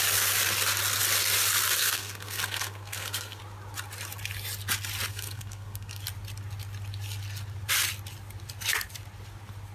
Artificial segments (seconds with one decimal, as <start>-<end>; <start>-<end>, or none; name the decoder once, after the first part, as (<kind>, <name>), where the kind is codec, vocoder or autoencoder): 1.8-3.4 (codec, SNAC); 5.1-6.0